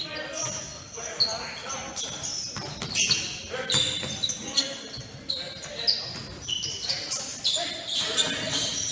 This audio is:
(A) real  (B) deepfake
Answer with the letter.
A